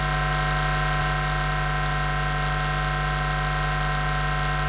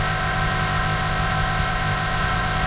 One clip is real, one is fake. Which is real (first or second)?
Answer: first